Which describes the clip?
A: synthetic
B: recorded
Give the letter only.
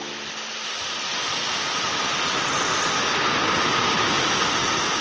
B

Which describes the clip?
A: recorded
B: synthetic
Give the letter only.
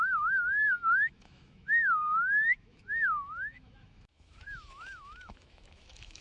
B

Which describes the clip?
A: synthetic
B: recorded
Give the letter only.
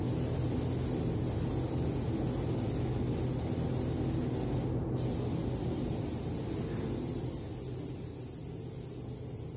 B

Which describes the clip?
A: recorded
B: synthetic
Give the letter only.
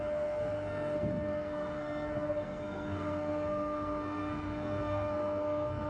B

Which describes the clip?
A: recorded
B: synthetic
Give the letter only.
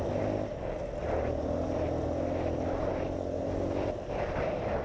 A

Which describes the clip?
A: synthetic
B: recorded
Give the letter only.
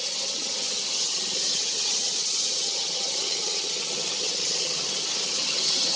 A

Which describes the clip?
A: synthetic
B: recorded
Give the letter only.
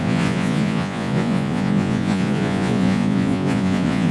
A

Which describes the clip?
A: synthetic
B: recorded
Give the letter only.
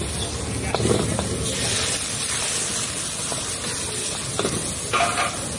B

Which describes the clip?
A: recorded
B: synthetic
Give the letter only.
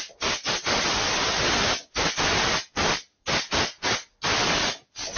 A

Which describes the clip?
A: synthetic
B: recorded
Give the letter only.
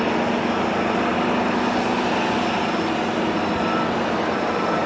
B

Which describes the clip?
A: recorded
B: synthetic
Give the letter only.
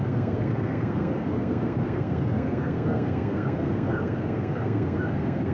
B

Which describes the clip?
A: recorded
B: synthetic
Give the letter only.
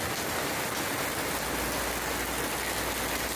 A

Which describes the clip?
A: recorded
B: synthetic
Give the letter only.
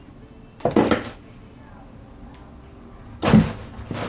A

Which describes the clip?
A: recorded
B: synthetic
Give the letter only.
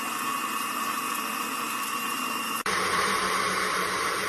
B